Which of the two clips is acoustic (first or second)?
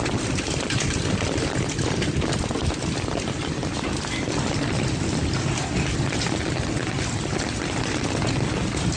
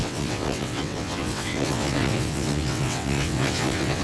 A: first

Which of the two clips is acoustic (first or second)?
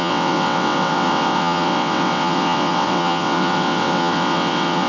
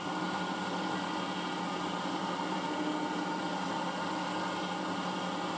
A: second